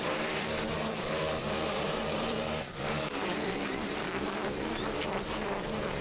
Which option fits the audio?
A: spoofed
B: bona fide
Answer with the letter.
A